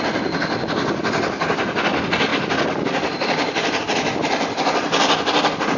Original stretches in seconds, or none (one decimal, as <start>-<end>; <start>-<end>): 0.0-2.3; 3.8-5.8